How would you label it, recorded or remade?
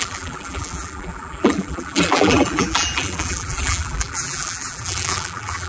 remade